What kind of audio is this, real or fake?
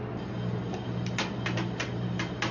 real